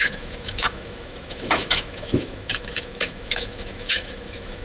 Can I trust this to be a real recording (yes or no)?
no